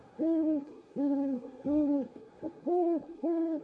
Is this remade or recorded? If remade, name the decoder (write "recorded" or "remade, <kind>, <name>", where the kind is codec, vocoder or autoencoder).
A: remade, codec, SNAC